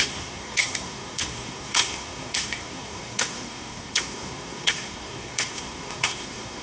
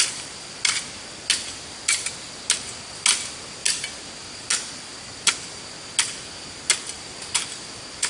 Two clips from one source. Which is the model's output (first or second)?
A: first